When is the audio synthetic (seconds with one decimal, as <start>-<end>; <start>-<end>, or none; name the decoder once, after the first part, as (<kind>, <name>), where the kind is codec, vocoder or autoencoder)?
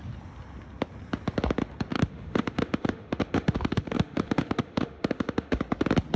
1.9-5.6 (autoencoder, DAC-VAE)